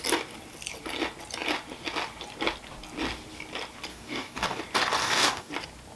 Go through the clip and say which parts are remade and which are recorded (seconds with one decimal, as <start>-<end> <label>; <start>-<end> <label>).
0.0-3.9 recorded; 3.9-4.6 remade; 4.6-5.0 recorded; 5.0-5.5 remade; 5.5-6.0 recorded